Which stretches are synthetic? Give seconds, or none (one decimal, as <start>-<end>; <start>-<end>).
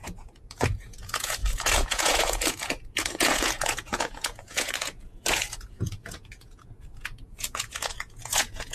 0.0-8.7